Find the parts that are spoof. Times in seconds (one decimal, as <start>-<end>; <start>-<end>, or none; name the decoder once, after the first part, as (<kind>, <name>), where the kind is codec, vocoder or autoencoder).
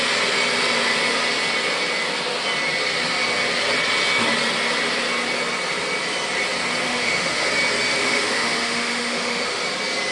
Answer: 6.9-7.5 (autoencoder, DAC-VAE); 8.0-9.6